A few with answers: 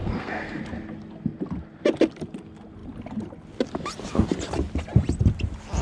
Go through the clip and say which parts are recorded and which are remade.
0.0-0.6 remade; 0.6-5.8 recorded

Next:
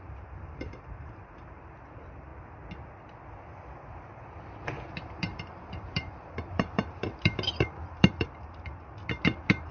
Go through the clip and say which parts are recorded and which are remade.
0.0-2.3 remade; 2.3-3.8 recorded; 3.8-9.7 remade

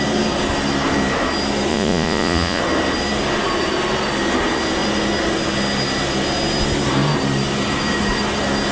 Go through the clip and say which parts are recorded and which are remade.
0.0-1.7 recorded; 1.7-2.6 remade; 2.6-8.7 recorded

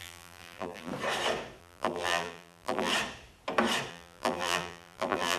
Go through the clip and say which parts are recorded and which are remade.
0.0-0.9 remade; 0.9-1.6 recorded; 1.6-2.9 remade; 2.9-3.9 recorded; 3.9-5.4 remade